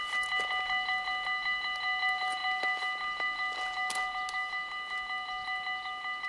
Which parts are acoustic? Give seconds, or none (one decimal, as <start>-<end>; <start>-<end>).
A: 0.0-6.3